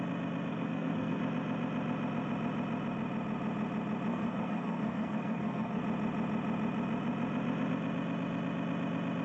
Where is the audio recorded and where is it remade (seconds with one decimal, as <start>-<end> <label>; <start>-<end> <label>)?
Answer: 0.0-0.5 recorded; 0.5-1.2 remade; 1.2-4.1 recorded; 4.1-5.8 remade; 5.8-9.2 recorded